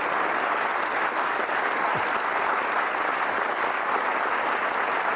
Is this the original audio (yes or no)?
yes